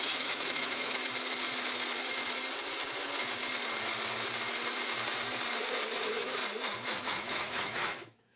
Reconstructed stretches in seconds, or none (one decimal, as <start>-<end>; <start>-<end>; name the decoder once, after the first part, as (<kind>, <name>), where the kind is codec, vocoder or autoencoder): 0.0-1.0 (autoencoder, DAC-VAE); 6.0-6.4; 7.0-8.4